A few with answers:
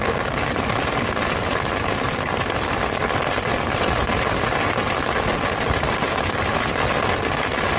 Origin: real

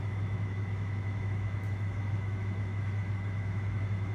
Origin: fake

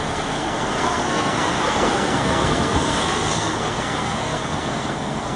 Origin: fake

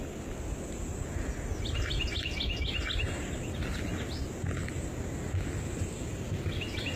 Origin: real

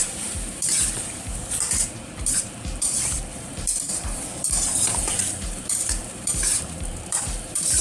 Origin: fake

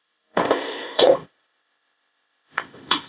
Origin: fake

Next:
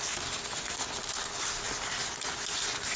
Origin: real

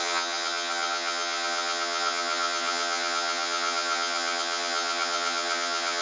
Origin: fake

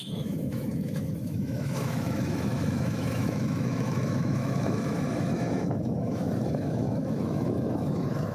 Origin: fake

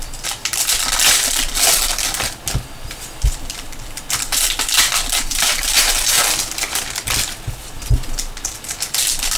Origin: real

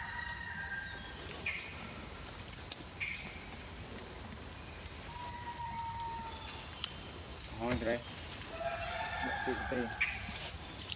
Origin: fake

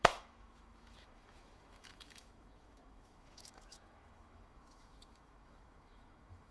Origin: fake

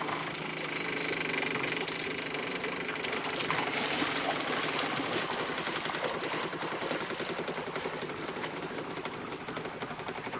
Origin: real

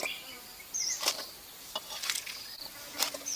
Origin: real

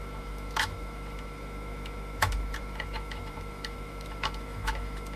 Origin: fake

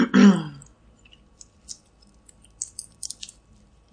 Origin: real